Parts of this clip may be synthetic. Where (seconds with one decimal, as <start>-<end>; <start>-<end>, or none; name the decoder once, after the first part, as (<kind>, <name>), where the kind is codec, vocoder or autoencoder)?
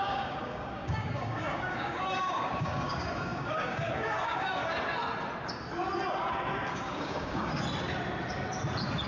0.0-4.6 (codec, DAC); 6.7-7.5